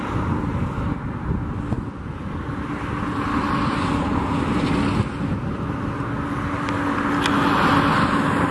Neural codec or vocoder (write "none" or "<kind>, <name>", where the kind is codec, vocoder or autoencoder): none